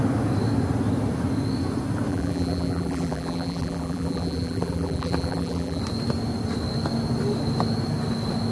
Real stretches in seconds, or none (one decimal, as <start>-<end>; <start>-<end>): 0.0-2.1; 5.8-8.5